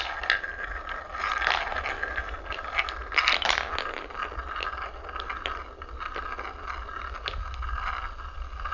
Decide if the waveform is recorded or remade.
recorded